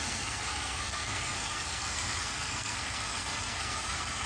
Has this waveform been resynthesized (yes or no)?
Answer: yes